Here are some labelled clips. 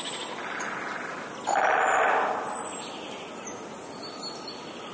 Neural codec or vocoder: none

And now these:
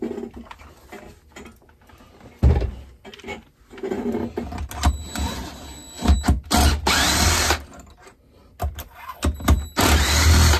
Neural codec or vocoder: none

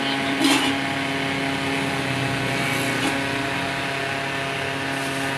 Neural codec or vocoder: none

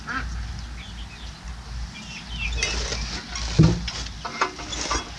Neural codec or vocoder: none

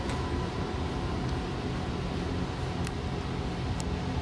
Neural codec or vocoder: none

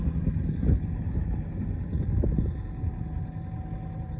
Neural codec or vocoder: none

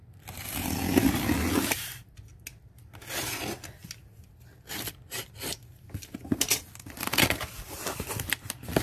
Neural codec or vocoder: none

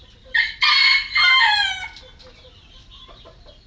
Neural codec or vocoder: none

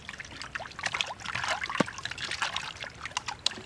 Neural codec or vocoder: none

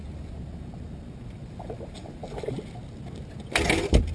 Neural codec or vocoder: none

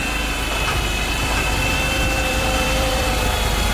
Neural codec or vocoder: vocoder, BigVGAN v2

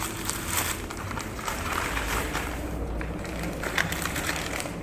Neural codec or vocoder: vocoder, BigVGAN v2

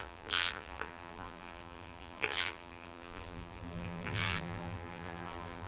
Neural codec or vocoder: vocoder, BigVGAN v2